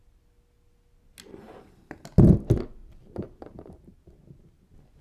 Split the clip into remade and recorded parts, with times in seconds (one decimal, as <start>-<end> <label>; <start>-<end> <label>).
0.0-2.8 recorded; 2.8-4.0 remade; 4.0-5.0 recorded